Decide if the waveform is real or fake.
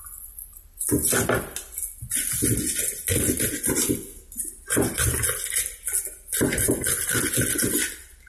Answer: real